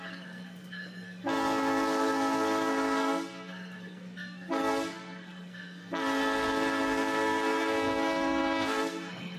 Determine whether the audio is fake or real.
fake